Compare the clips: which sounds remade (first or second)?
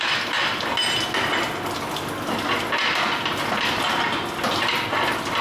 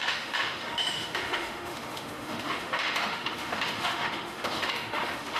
second